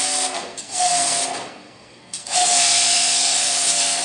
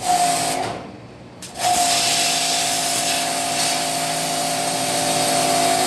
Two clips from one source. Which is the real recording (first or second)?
second